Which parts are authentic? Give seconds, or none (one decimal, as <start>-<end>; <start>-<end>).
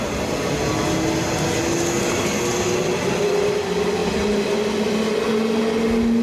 0.0-6.2